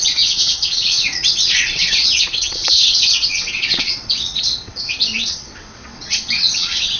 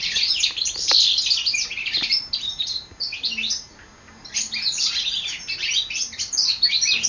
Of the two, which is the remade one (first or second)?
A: first